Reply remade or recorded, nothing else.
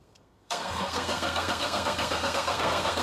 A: remade